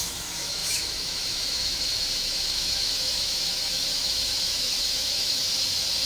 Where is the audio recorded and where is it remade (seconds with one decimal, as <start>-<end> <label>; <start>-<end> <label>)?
0.0-5.4 remade; 5.4-6.1 recorded